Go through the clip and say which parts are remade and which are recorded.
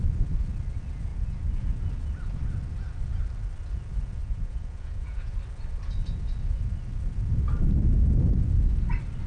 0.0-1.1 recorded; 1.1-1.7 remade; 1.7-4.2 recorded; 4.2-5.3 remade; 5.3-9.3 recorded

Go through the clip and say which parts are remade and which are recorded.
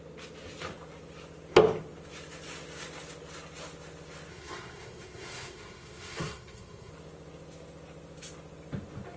0.0-4.3 recorded; 4.3-6.9 remade; 6.9-9.2 recorded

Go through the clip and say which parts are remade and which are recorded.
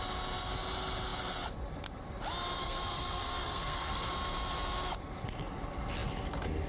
0.0-2.6 recorded; 2.6-4.1 remade; 4.1-6.7 recorded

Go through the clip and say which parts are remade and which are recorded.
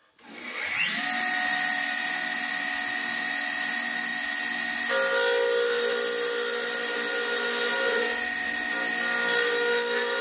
0.0-10.2 recorded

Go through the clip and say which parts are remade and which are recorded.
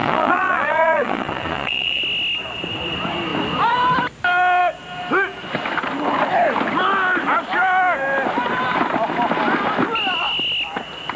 0.0-2.0 remade; 2.0-11.2 recorded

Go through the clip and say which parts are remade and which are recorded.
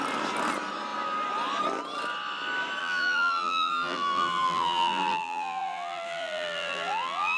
0.0-2.8 recorded; 2.8-7.4 remade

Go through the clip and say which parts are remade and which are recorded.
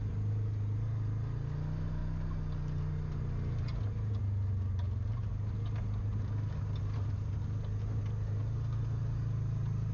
0.0-9.9 recorded